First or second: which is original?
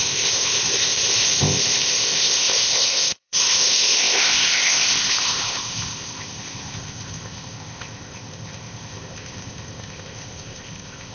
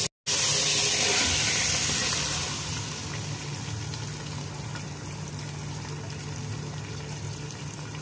second